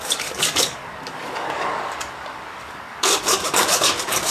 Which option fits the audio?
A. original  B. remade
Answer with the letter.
B